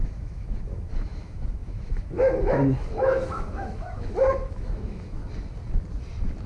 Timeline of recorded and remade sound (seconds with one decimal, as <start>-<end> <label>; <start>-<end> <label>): 0.0-5.2 remade; 5.2-6.5 recorded